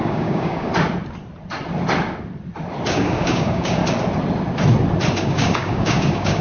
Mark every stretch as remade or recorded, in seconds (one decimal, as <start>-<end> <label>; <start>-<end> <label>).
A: 0.0-0.7 remade; 0.7-2.9 recorded; 2.9-3.8 remade; 3.8-5.2 recorded; 5.2-6.4 remade